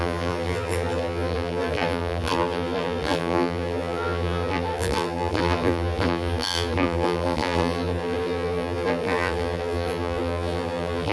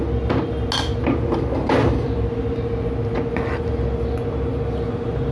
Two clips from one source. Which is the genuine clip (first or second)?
second